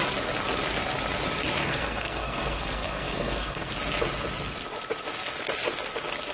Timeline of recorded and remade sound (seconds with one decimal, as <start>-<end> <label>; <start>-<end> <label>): 0.0-1.6 recorded; 1.6-3.7 remade; 3.7-6.3 recorded

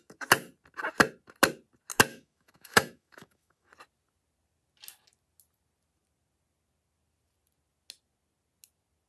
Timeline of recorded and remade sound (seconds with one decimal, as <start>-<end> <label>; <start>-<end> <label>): 0.0-2.1 recorded; 2.1-3.7 remade; 3.7-9.1 recorded

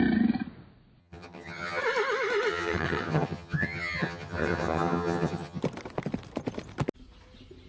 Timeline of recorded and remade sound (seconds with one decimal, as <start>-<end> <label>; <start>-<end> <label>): 0.0-1.0 recorded; 1.0-1.8 remade; 1.8-2.5 recorded; 2.5-5.6 remade; 5.6-7.7 recorded

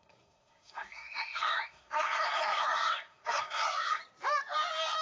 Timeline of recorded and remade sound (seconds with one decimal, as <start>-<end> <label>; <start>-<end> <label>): 0.0-4.0 remade; 4.0-5.0 recorded

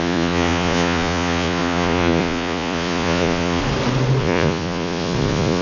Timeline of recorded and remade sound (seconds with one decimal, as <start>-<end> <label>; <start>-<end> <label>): 0.0-3.6 remade; 3.6-4.2 recorded; 4.2-5.6 remade

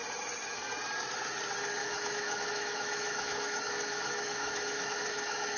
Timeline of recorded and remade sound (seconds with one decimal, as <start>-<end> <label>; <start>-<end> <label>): 0.0-1.8 recorded; 1.8-5.6 remade